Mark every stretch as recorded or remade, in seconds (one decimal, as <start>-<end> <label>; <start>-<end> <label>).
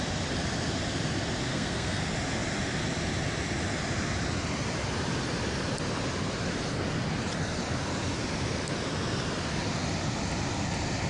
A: 0.0-1.5 recorded; 1.5-2.0 remade; 2.0-11.1 recorded